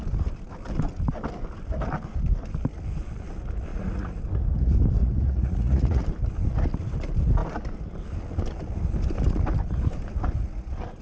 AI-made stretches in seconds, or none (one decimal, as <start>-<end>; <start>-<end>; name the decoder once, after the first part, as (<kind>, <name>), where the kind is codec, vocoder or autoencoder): 3.7-4.2 (vocoder, Vocos); 5.0-6.0

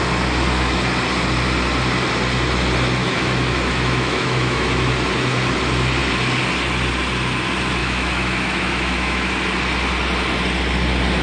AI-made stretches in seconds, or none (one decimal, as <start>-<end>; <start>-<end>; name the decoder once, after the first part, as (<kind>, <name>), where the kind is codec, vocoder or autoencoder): 3.0-4.9 (autoencoder, DAC-VAE); 7.8-9.3

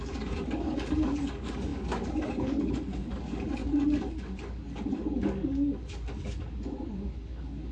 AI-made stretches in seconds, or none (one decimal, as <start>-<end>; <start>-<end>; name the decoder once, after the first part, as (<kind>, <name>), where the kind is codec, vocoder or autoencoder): 0.0-7.7 (codec, DAC)

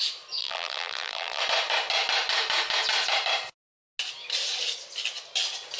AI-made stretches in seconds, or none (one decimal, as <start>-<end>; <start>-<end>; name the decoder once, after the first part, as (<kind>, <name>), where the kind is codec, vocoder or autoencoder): 0.4-1.4 (vocoder, BigVGAN v2)

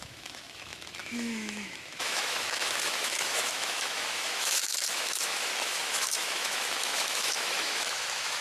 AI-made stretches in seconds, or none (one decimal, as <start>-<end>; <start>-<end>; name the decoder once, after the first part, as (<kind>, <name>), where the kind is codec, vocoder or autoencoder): 0.0-8.4 (autoencoder, DAC-VAE)

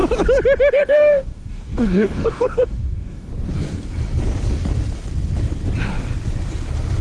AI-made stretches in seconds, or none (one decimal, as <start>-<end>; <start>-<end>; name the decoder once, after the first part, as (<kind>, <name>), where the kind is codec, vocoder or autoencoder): 0.7-3.3 (codec, DAC)

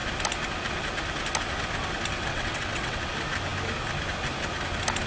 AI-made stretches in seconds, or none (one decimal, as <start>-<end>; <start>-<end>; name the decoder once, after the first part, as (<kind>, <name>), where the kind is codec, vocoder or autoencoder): 2.3-3.0 (vocoder, WaveNeXt)